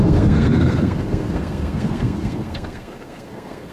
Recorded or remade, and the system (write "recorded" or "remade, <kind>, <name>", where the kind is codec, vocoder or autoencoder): remade, codec, SNAC